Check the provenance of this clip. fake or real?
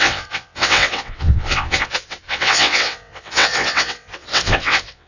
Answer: fake